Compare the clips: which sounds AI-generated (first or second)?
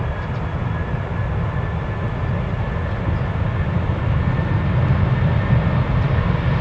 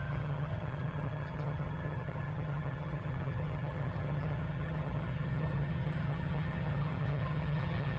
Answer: second